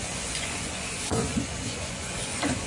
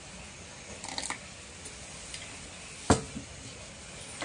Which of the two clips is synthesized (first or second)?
first